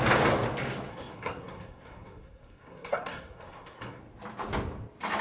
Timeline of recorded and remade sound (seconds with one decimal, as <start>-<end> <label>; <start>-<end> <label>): 0.0-0.9 recorded; 0.9-4.0 remade; 4.0-5.2 recorded